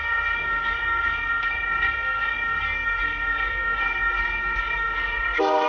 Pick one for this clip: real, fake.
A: fake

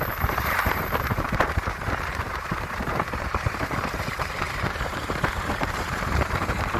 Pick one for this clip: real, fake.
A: fake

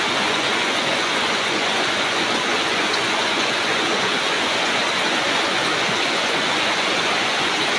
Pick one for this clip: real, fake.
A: fake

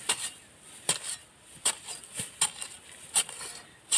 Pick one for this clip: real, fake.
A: real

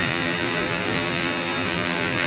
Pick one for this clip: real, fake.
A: fake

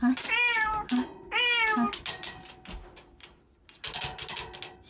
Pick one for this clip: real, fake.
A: real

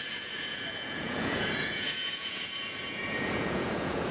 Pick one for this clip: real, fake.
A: fake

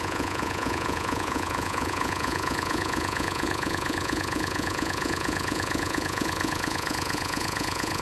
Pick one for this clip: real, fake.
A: fake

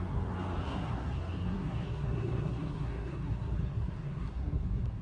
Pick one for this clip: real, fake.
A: fake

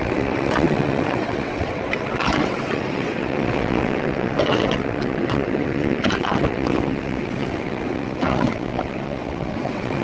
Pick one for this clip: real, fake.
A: fake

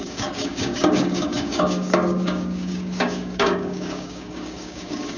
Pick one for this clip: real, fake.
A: fake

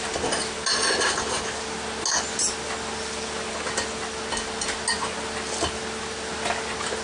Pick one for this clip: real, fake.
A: real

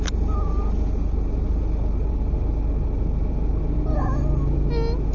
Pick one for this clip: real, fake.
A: real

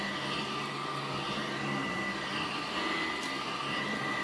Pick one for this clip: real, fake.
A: real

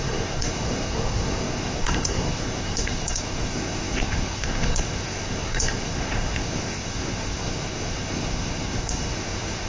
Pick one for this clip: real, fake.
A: fake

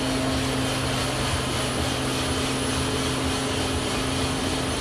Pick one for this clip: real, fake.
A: real